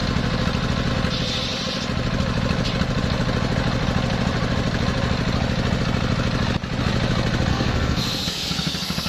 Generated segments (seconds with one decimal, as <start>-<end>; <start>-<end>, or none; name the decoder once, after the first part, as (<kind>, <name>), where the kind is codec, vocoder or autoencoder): 7.5-9.1 (codec, SNAC)